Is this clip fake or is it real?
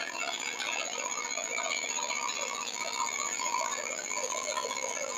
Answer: fake